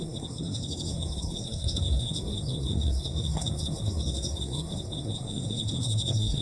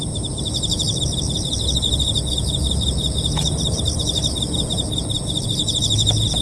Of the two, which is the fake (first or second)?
first